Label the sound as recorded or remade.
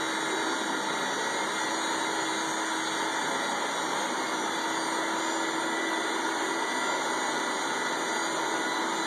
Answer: recorded